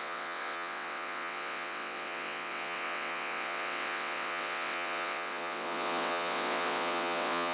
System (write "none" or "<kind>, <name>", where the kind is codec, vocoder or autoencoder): vocoder, WaveNeXt